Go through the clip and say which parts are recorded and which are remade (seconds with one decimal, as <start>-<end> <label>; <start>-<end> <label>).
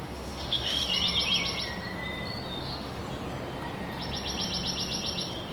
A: 0.0-0.9 remade; 0.9-2.6 recorded; 2.6-3.0 remade; 3.0-5.5 recorded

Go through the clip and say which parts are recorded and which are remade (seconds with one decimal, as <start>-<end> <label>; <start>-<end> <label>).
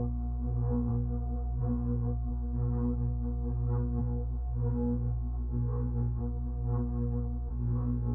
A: 0.0-2.3 remade; 2.3-4.0 recorded; 4.0-6.2 remade; 6.2-7.5 recorded; 7.5-8.1 remade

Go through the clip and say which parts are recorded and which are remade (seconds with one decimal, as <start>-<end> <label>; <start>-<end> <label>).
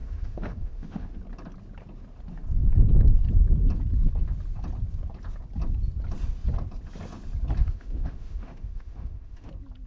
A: 0.0-1.2 remade; 1.2-7.6 recorded; 7.6-9.5 remade; 9.5-9.9 recorded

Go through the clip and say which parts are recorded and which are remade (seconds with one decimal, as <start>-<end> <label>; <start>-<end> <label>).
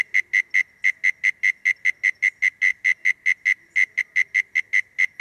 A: 0.0-5.2 recorded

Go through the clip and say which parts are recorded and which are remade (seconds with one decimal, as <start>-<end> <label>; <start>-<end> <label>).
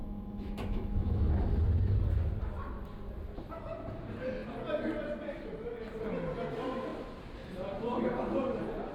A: 0.0-1.2 remade; 1.2-8.9 recorded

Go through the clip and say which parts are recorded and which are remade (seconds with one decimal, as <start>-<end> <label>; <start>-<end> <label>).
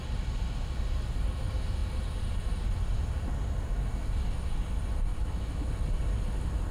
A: 0.0-5.1 recorded; 5.1-5.7 remade; 5.7-6.7 recorded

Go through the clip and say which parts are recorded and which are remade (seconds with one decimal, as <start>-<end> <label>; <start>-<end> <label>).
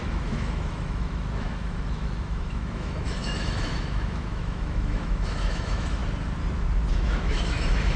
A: 0.0-6.0 remade; 6.0-6.9 recorded; 6.9-8.0 remade